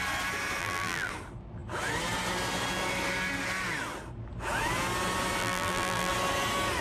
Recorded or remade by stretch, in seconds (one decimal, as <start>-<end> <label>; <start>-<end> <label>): 0.0-0.6 recorded; 0.6-1.1 remade; 1.1-5.4 recorded; 5.4-6.1 remade; 6.1-6.8 recorded

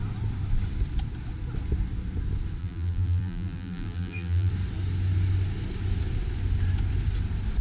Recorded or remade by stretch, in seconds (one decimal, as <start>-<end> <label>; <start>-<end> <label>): 0.0-2.6 recorded; 2.6-4.5 remade; 4.5-7.6 recorded

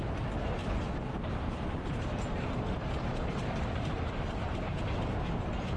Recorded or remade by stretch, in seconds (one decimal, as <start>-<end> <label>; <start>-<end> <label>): 0.0-0.6 recorded; 0.6-4.1 remade; 4.1-5.8 recorded

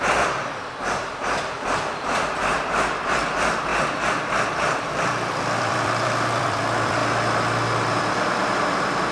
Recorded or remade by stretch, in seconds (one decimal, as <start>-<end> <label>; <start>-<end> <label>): 0.0-3.7 remade; 3.7-4.5 recorded; 4.5-7.0 remade; 7.0-7.9 recorded; 7.9-9.1 remade

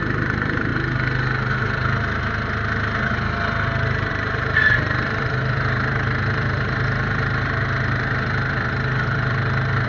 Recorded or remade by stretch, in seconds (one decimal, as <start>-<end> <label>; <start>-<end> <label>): 0.0-0.7 remade; 0.7-4.1 recorded; 4.1-9.9 remade